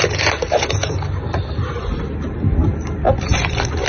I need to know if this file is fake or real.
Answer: fake